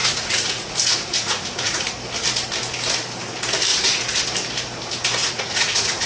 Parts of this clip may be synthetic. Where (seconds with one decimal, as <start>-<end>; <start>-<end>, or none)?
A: 0.0-1.9; 3.7-4.2; 5.2-6.1